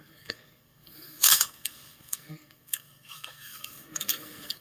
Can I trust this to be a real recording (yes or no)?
no